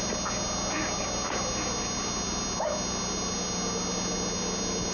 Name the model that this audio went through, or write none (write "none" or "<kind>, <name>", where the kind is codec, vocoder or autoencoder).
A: none